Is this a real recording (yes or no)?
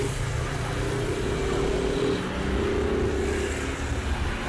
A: yes